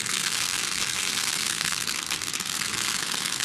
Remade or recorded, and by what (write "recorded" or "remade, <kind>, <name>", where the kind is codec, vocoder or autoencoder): remade, codec, SNAC